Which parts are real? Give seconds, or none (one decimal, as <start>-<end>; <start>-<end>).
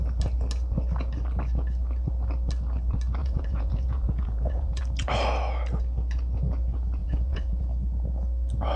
0.0-3.2; 4.8-7.0; 7.6-8.8